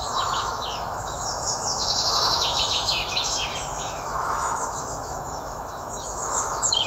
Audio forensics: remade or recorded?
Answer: remade